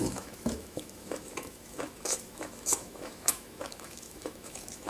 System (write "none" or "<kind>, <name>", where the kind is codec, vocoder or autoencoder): autoencoder, DAC-VAE